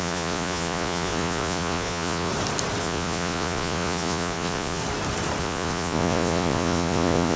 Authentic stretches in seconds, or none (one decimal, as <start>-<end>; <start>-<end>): 2.3-2.8; 4.8-5.4